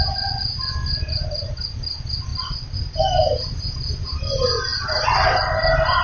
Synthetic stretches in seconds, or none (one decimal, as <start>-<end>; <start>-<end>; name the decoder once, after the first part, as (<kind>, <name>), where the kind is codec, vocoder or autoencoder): none